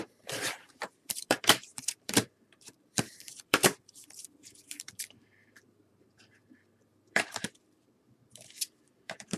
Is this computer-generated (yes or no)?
yes